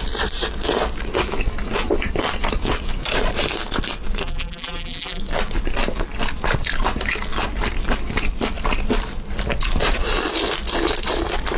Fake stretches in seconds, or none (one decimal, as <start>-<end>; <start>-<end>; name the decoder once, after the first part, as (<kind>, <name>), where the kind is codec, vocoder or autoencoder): 4.2-5.2 (vocoder, BigVGAN v2)